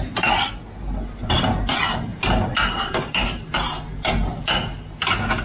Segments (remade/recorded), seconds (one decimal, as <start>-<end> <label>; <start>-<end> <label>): 0.0-1.2 recorded; 1.2-1.7 remade; 1.7-2.1 recorded; 2.1-3.5 remade; 3.5-5.4 recorded